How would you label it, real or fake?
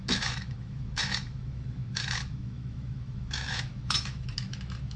fake